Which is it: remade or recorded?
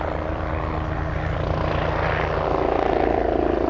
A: recorded